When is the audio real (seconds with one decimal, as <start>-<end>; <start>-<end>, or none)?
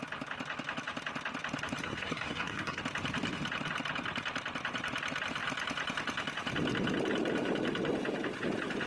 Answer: 0.0-1.8; 2.8-8.9